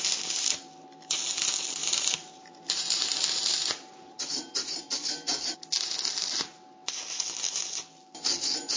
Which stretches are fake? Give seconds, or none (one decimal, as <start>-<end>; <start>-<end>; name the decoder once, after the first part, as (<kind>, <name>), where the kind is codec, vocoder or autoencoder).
1.8-4.8 (vocoder, BigVGAN v2)